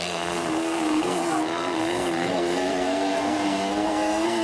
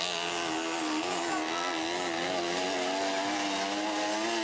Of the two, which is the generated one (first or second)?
first